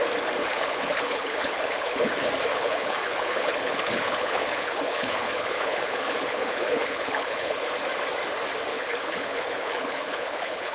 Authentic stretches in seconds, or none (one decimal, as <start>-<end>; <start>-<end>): 0.0-0.4; 2.1-2.5; 7.7-8.7